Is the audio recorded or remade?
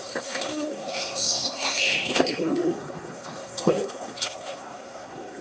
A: remade